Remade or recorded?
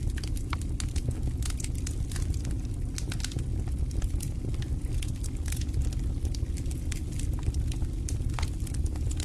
recorded